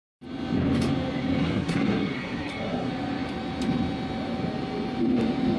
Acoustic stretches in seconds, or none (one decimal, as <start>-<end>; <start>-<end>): 0.0-1.4; 2.9-5.6